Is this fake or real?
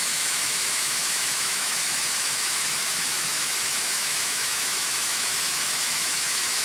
fake